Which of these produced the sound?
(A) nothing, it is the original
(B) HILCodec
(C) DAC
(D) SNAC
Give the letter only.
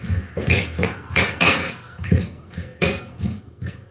D